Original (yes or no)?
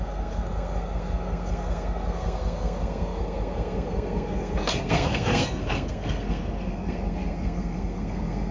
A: no